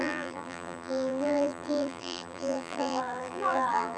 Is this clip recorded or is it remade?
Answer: remade